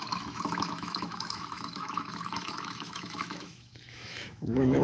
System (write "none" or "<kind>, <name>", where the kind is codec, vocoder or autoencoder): autoencoder, DAC-VAE